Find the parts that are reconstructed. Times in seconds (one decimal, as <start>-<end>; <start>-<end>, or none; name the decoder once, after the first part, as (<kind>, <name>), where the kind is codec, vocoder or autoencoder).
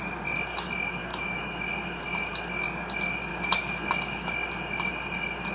1.1-1.6 (autoencoder, DAC-VAE); 3.3-3.9